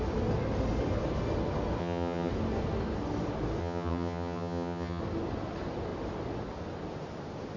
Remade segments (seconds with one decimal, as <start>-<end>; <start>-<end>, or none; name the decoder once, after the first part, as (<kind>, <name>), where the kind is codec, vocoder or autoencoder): 1.8-2.3 (vocoder, HiFi-GAN); 3.6-5.0